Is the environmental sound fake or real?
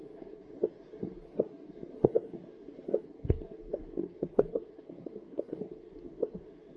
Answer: fake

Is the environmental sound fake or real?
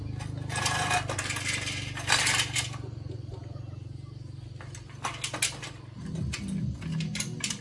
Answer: real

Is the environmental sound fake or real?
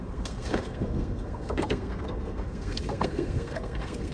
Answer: fake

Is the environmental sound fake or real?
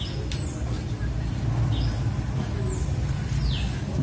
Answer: real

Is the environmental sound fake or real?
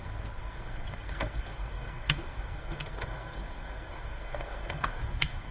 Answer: fake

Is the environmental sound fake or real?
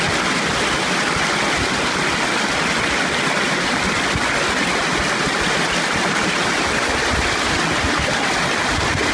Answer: real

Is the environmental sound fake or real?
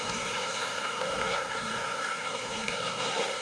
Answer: fake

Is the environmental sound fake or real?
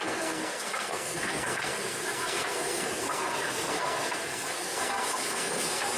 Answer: fake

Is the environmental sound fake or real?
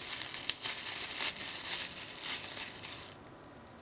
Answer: real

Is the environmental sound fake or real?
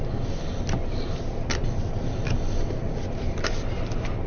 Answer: real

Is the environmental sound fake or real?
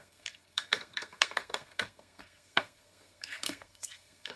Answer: fake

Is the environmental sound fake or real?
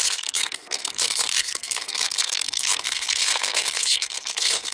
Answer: fake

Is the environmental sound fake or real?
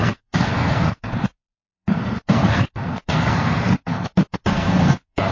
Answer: fake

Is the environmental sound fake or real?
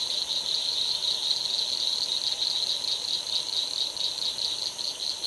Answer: real